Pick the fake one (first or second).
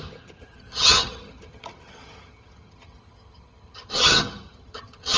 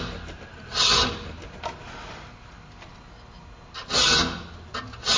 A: first